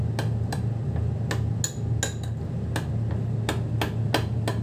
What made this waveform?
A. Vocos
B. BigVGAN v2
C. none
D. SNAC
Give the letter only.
C